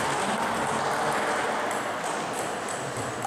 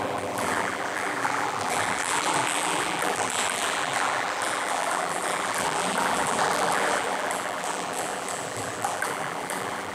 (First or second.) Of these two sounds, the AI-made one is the second